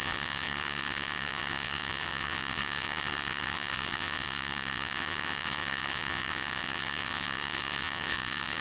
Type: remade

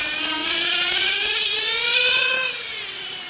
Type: remade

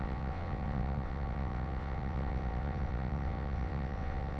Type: remade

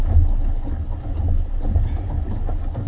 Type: recorded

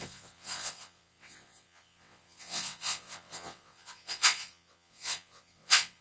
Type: remade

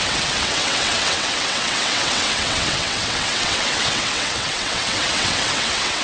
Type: remade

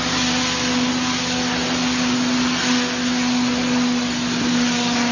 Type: recorded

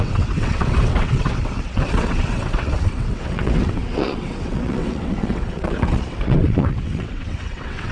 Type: remade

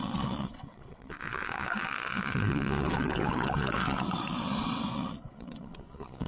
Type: remade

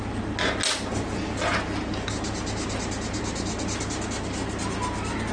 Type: recorded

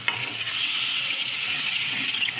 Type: remade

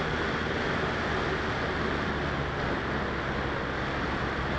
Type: recorded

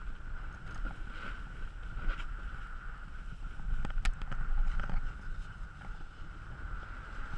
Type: recorded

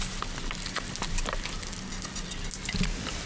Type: recorded